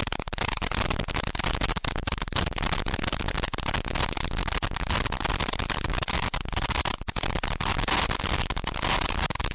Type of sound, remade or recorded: recorded